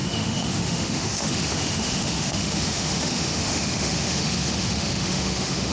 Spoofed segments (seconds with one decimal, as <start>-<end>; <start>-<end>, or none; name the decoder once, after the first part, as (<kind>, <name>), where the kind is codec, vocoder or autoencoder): 0.0-5.7 (autoencoder, DAC-VAE)